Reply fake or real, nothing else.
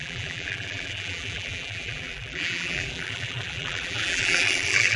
fake